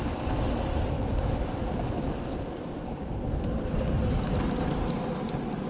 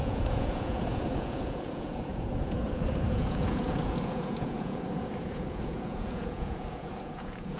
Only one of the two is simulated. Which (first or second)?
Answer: second